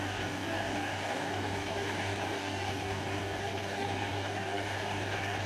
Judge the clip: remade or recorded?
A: remade